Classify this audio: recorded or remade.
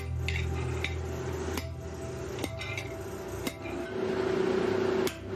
recorded